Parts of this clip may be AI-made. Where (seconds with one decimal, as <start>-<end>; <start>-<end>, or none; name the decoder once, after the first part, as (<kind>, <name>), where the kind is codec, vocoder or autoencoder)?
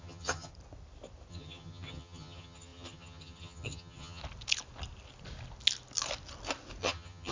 0.0-0.5 (vocoder, HiFi-GAN); 1.3-4.2; 6.8-7.3